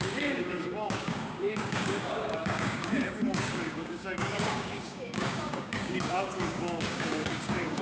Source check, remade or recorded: remade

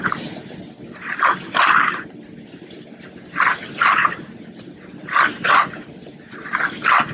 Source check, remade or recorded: recorded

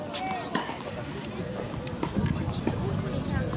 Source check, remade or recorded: recorded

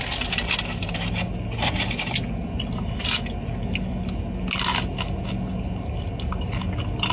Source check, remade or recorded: recorded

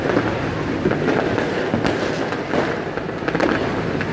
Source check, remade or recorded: recorded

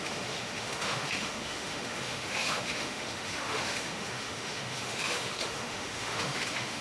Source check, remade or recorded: remade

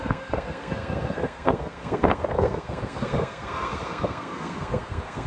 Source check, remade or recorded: remade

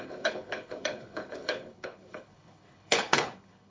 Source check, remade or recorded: remade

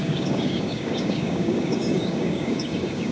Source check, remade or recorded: remade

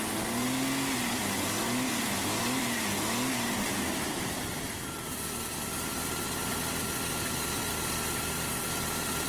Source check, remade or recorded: recorded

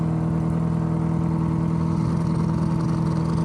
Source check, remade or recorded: recorded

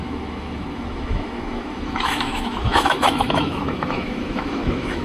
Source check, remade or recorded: remade